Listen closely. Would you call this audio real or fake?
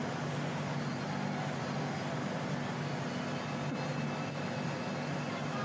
real